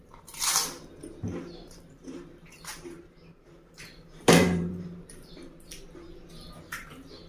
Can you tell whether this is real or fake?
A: fake